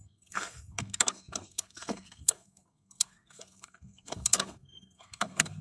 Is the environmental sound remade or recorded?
remade